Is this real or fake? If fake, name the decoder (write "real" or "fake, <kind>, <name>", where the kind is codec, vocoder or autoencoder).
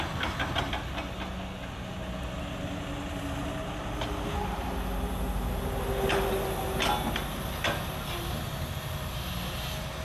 real